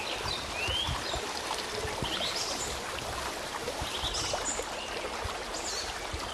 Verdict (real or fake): real